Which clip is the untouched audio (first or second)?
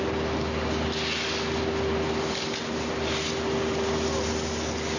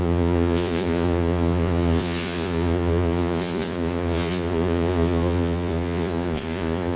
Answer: first